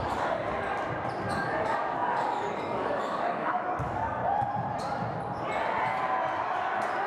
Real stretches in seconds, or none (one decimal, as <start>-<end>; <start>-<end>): 0.7-1.3; 4.2-7.1